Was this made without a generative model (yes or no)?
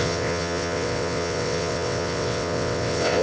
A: no